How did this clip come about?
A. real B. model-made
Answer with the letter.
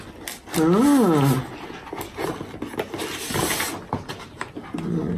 A